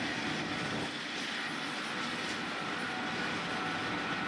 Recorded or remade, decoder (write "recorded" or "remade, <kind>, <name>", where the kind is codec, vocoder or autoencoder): recorded